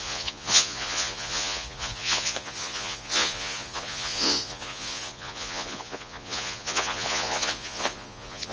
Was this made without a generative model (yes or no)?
no